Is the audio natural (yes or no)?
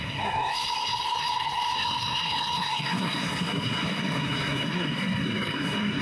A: no